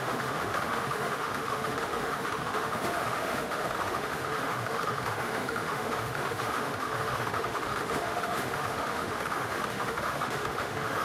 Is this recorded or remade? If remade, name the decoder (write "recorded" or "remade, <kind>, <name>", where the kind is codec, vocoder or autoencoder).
remade, autoencoder, DAC-VAE